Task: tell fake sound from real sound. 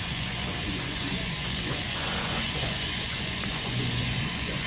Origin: fake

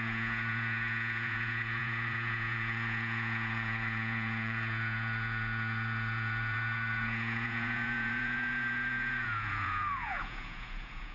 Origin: fake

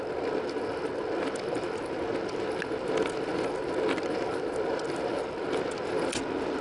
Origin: real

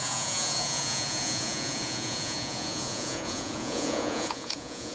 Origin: fake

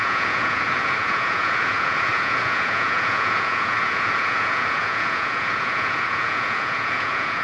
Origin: fake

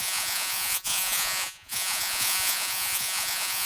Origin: fake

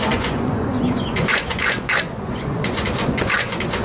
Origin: fake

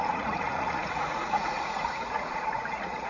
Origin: fake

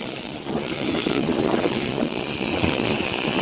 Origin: fake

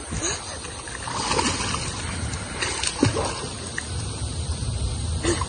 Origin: real